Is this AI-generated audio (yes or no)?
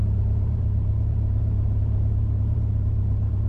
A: yes